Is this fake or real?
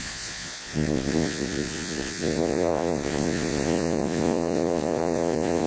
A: fake